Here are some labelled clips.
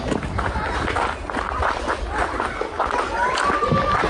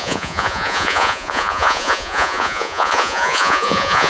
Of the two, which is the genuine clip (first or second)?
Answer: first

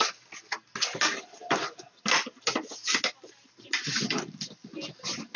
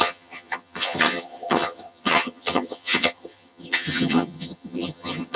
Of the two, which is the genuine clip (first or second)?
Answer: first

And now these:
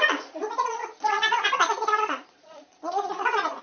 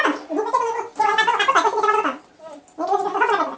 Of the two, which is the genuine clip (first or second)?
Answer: second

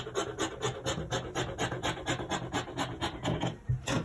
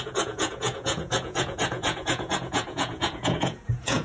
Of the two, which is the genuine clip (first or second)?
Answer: first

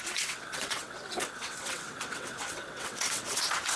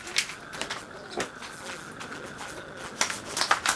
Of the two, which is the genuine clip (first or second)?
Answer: second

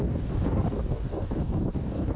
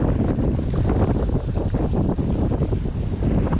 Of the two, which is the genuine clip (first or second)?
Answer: second